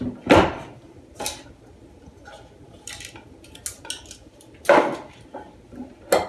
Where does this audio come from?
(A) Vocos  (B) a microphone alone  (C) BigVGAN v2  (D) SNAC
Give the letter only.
B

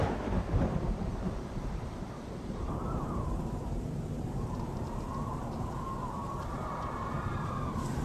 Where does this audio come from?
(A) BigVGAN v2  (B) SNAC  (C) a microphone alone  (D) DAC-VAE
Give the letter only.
A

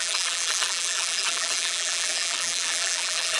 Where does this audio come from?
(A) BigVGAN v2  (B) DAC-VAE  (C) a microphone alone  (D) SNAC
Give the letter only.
A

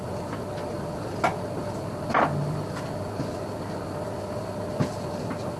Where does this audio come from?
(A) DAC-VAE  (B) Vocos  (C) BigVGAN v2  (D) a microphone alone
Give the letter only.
D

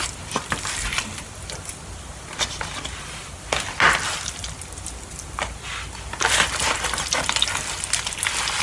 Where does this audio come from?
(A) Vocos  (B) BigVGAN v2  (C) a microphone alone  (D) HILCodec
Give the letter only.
C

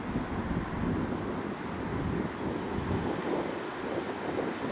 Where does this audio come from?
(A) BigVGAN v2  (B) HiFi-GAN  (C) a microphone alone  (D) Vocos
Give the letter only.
C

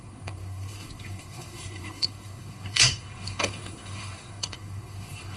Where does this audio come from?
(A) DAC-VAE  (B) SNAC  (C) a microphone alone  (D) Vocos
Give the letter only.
B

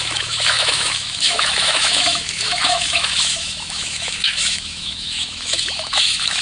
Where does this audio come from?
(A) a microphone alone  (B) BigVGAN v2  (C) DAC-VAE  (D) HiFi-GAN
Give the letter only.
C